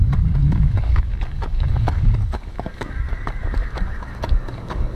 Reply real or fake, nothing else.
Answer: fake